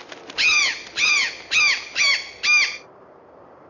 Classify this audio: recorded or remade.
recorded